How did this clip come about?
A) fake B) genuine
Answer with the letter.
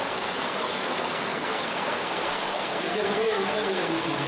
A